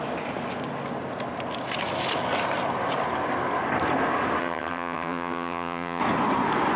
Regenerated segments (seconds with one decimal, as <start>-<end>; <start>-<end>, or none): 4.4-6.0